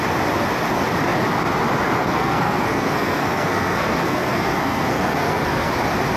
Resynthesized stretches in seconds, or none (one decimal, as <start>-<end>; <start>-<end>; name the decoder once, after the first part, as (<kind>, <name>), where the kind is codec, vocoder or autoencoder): 2.0-5.7 (codec, SNAC)